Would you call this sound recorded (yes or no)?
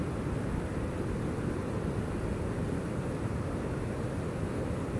yes